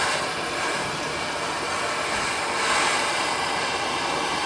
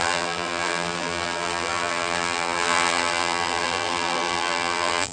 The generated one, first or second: second